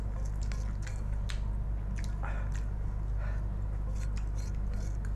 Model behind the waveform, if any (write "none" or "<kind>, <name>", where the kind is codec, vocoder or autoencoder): none